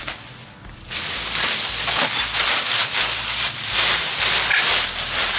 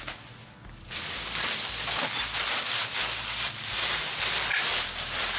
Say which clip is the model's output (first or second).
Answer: first